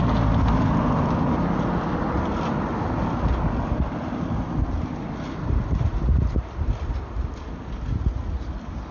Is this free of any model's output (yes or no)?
yes